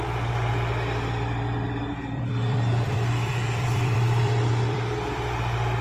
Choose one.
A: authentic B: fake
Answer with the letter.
B